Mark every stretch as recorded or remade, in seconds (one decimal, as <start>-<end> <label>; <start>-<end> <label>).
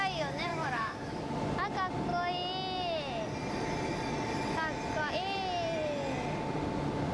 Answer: 0.0-0.5 recorded; 0.5-1.4 remade; 1.4-7.1 recorded